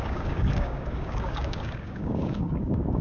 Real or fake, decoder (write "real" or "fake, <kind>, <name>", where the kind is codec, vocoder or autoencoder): fake, codec, DAC